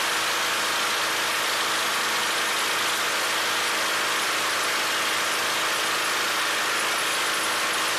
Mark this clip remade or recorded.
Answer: recorded